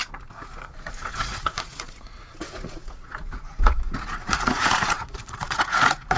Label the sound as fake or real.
fake